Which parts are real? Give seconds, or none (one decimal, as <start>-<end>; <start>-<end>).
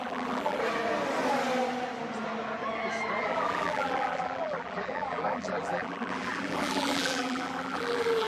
0.6-3.2